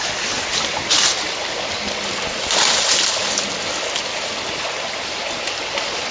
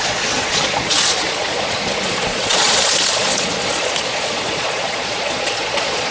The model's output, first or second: second